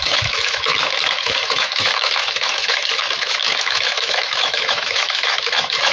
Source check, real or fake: fake